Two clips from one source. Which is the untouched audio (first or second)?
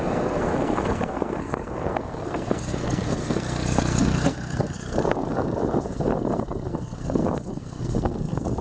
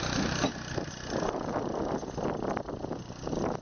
second